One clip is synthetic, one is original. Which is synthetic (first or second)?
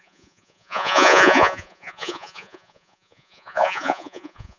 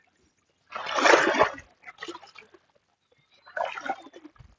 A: first